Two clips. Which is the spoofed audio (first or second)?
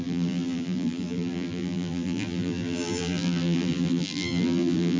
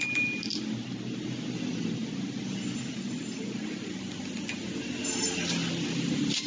first